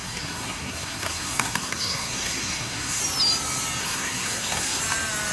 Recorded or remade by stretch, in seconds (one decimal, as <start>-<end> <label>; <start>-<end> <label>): 0.0-3.0 remade; 3.0-3.8 recorded; 3.8-4.8 remade; 4.8-5.3 recorded